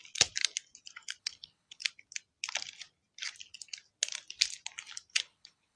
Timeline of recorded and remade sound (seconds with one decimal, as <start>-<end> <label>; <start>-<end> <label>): 0.0-1.2 recorded; 1.2-1.8 remade; 1.8-5.2 recorded; 5.2-5.8 remade